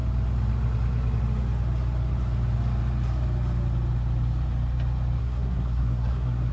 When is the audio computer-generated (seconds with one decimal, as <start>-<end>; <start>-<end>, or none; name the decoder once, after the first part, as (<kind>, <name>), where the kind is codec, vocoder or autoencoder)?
5.2-6.5 (codec, SNAC)

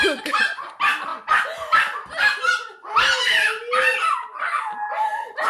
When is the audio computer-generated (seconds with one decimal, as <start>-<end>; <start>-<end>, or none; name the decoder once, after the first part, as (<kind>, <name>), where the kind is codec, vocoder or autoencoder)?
none